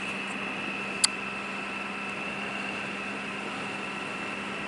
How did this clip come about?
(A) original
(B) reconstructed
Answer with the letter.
A